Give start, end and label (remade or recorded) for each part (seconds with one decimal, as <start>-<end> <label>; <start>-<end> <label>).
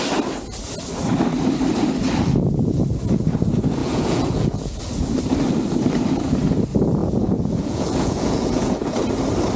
0.0-3.8 recorded; 3.8-4.8 remade; 4.8-7.0 recorded; 7.0-9.0 remade; 9.0-9.6 recorded